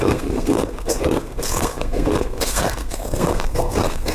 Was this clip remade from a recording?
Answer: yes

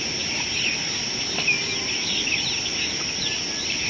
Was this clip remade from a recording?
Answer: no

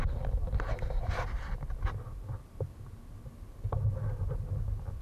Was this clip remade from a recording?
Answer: no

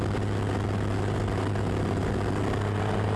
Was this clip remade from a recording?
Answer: no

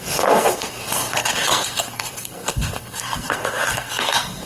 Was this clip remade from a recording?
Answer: yes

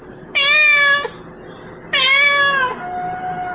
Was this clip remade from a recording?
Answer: no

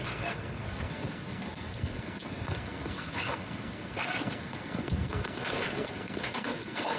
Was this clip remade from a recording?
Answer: yes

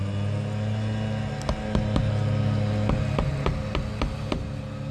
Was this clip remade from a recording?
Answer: no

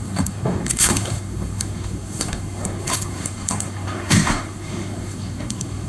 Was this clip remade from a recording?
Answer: yes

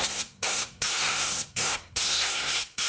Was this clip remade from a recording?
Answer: yes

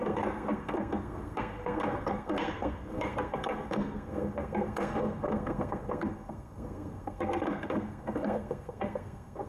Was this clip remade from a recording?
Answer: yes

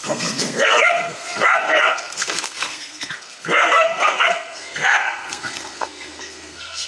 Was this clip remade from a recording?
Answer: yes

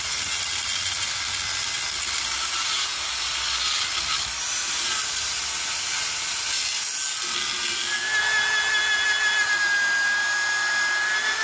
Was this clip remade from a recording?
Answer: no